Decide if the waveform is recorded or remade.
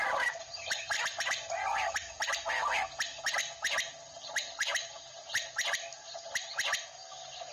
recorded